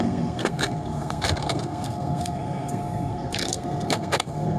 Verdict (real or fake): fake